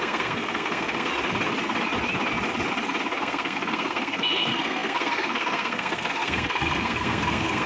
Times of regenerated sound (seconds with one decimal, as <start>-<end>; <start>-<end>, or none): 0.0-1.1; 3.2-7.7